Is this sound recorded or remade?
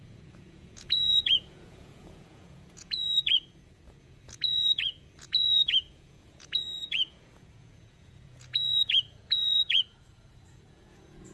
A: remade